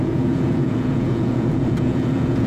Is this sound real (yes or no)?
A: no